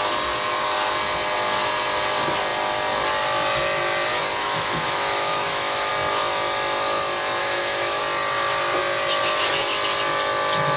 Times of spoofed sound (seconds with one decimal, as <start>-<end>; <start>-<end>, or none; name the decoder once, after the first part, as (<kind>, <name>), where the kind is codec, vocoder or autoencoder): 4.4-5.9 (autoencoder, DAC-VAE); 7.4-8.0